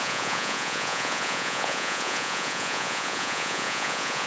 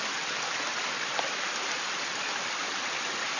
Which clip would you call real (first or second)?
second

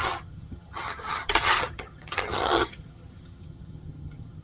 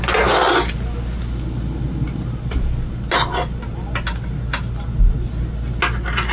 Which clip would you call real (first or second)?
second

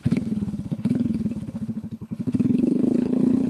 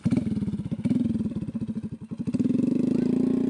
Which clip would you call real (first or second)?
second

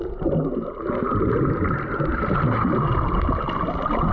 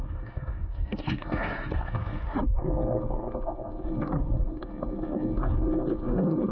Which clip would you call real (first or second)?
first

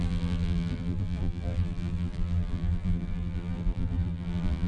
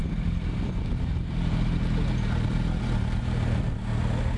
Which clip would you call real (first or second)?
second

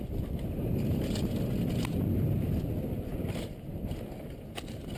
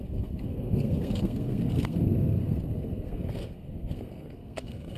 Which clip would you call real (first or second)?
first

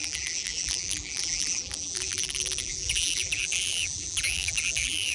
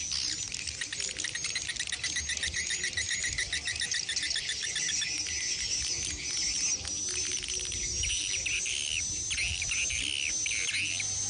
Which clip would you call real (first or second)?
second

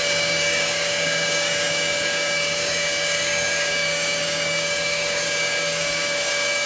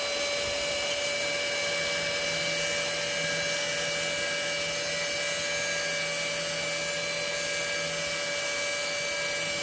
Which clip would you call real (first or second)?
second